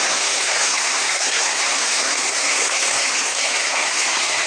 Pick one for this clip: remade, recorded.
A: remade